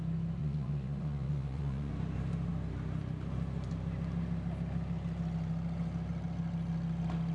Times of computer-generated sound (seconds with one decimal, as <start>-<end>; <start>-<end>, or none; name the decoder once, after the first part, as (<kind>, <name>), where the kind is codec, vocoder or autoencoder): 0.4-1.9 (vocoder, Vocos)